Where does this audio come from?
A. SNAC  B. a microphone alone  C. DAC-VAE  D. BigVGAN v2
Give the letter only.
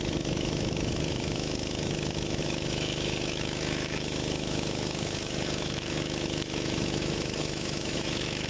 C